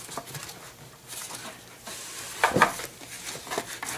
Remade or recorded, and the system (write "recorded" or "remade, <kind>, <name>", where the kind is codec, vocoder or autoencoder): recorded